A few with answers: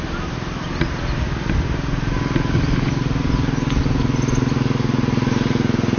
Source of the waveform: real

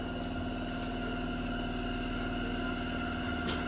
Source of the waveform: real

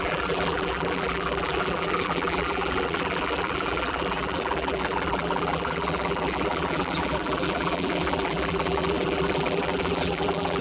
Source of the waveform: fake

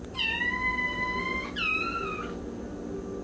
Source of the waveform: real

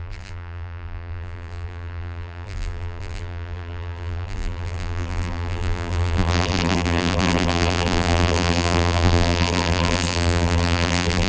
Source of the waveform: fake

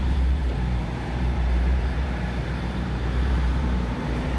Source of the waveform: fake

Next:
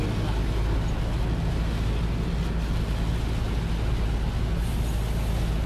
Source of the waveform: real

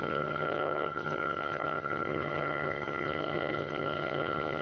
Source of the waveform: fake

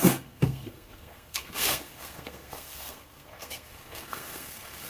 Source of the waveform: fake